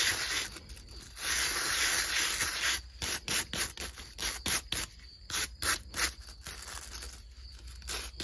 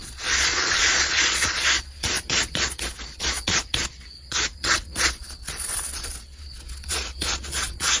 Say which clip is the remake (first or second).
second